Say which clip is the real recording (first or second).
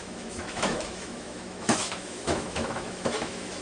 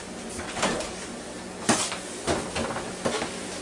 second